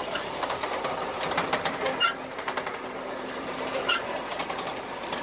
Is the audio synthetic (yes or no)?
yes